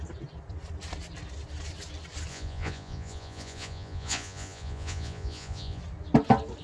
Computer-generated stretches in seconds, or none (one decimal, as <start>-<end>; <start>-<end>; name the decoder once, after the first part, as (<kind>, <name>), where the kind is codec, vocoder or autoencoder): 2.3-5.8 (vocoder, Vocos)